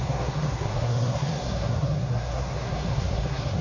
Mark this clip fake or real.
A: fake